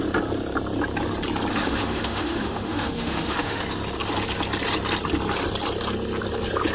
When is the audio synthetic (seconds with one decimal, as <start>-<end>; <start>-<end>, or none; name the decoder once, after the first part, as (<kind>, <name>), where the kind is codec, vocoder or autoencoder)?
1.5-3.6 (autoencoder, DAC-VAE)